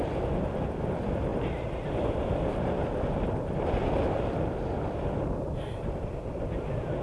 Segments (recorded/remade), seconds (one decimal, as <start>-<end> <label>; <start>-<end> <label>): 0.0-7.0 recorded